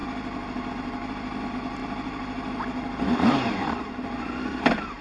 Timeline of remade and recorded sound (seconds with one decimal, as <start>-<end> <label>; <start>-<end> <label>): 0.0-5.0 recorded